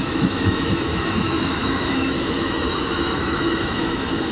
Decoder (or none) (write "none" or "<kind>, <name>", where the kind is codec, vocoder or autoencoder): autoencoder, DAC-VAE